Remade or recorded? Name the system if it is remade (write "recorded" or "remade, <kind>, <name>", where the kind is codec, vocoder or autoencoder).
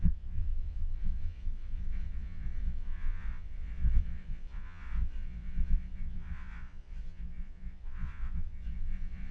remade, vocoder, Vocos